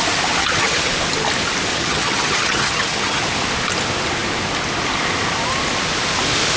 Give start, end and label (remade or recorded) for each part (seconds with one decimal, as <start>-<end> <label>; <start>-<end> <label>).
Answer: 0.0-0.4 recorded; 0.4-0.9 remade; 0.9-1.7 recorded; 1.7-3.2 remade; 3.2-6.6 recorded